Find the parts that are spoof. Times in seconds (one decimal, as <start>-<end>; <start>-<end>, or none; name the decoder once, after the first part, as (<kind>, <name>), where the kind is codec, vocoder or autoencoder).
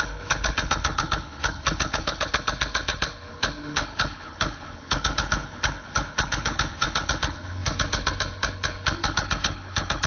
0.0-10.1 (codec, HILCodec)